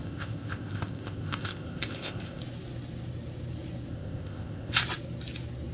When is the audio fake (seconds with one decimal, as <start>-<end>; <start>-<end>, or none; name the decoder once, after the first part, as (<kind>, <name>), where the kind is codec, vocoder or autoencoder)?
0.0-2.4 (codec, ZipCodec); 3.9-4.7